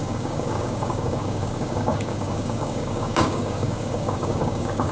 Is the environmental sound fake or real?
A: fake